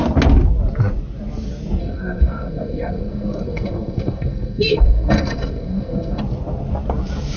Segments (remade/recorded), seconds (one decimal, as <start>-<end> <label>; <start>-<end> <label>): 0.0-1.8 recorded; 1.8-6.2 remade; 6.2-7.4 recorded